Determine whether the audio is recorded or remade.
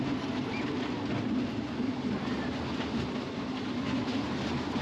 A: recorded